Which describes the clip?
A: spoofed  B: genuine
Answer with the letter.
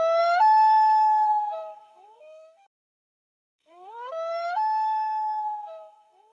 A